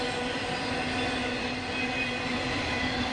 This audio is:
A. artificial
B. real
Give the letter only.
B